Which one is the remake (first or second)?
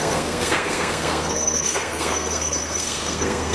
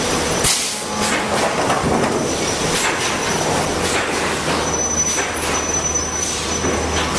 first